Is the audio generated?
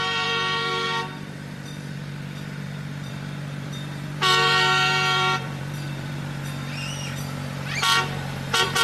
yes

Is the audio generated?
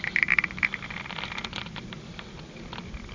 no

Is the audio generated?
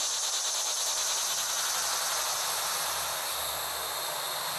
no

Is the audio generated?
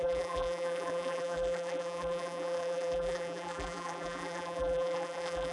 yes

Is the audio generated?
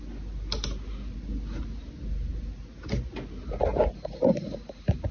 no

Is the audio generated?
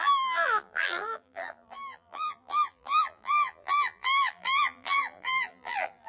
yes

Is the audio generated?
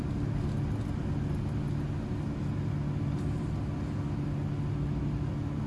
no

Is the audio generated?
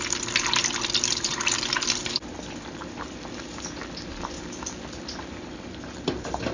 yes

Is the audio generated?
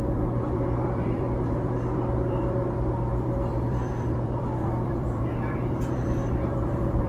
yes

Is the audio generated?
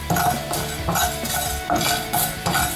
no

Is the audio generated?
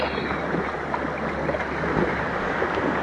no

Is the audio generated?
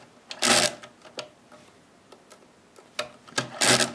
no